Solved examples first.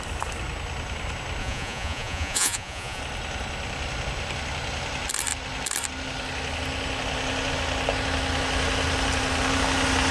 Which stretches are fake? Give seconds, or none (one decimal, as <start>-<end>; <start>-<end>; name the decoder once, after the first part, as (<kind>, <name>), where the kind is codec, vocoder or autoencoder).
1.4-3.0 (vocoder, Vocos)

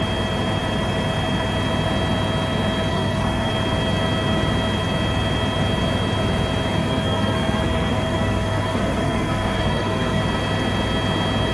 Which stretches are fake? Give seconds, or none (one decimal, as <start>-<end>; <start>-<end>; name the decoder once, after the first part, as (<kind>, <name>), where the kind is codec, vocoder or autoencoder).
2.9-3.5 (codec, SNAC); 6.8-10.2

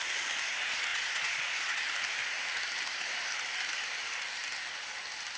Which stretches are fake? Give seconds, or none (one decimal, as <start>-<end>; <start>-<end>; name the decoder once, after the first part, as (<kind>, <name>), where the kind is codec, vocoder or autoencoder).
0.9-1.8 (vocoder, Vocos)

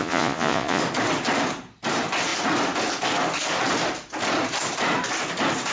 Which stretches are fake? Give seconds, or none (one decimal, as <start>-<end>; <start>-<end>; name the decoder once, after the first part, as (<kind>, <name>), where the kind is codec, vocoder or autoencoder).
0.0-0.8 (vocoder, Vocos)